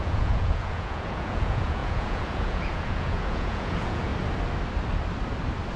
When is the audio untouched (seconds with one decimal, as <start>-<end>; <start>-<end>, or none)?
4.1-5.8